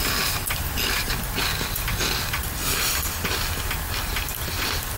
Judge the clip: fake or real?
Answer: real